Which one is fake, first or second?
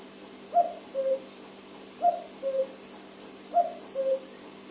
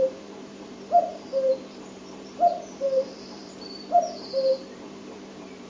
second